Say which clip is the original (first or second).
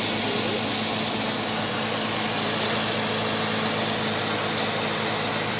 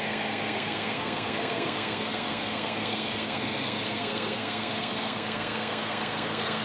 first